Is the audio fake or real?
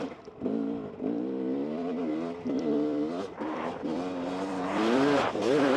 fake